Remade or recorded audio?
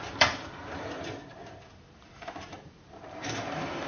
remade